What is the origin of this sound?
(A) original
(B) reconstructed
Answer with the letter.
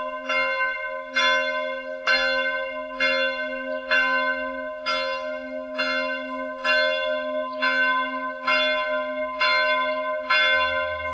A